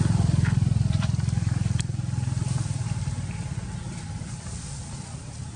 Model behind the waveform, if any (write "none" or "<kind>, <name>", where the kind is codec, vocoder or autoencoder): none